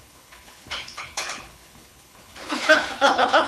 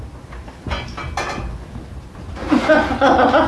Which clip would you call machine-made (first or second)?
first